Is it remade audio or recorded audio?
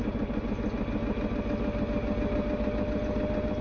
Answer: recorded